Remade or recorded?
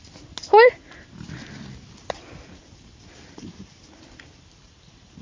recorded